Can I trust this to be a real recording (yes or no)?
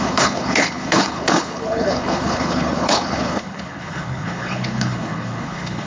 no